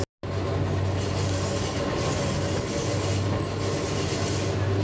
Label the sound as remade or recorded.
recorded